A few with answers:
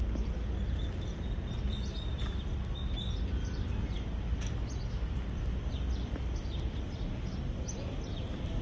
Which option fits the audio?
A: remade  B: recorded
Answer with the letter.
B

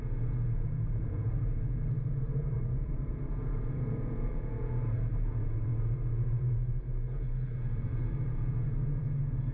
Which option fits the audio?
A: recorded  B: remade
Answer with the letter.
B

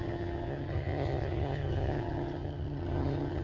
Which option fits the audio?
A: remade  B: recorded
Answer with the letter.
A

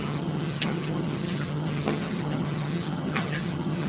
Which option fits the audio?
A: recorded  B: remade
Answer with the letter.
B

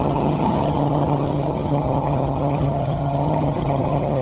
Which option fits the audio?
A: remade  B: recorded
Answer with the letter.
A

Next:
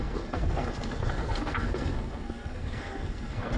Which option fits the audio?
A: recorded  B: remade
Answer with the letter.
B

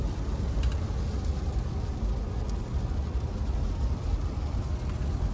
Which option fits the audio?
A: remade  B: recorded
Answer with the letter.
B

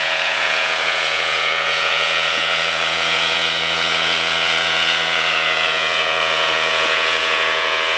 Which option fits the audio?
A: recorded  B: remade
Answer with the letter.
B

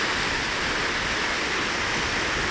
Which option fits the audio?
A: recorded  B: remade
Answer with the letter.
A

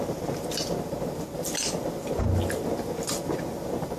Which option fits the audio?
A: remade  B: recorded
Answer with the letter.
B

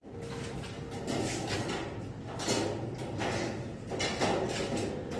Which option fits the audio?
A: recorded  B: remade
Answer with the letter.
A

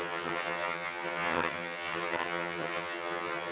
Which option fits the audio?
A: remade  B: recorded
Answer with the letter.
A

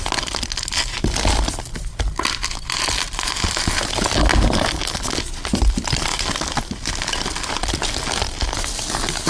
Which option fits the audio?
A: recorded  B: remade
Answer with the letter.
A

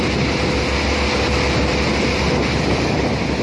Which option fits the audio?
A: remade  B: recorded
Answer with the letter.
B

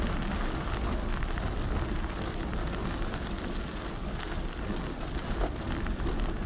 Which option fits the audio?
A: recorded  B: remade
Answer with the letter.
A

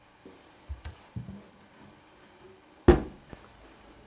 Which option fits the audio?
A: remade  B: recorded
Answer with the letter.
B